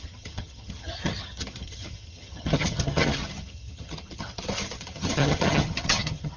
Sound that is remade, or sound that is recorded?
remade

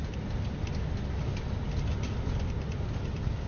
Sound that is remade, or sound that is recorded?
recorded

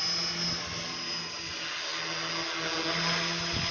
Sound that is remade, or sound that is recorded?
recorded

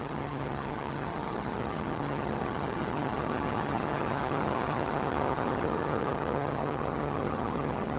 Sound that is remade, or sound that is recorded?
remade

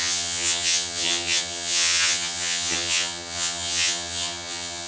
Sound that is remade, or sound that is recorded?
remade